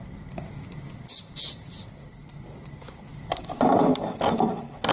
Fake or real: real